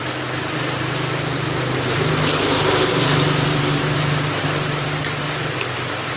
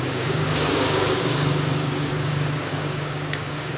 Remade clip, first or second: second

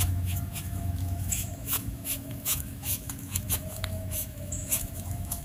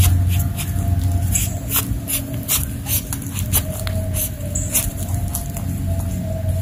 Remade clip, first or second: first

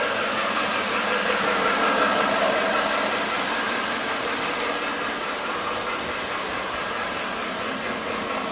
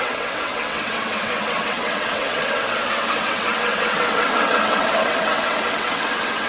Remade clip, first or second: second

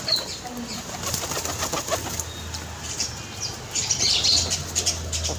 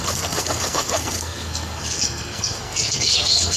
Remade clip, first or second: second